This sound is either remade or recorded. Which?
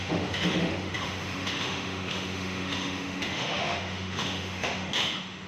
remade